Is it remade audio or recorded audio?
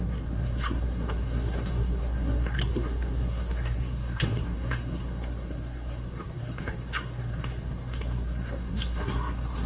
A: remade